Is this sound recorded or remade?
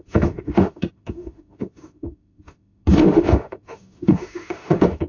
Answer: remade